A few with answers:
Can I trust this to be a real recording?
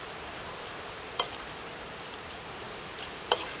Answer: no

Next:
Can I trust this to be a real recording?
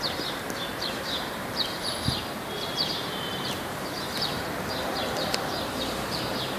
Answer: no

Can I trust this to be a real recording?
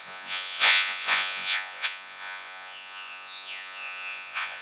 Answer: no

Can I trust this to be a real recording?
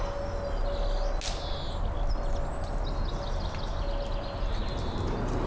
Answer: yes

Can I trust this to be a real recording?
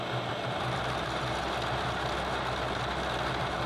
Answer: yes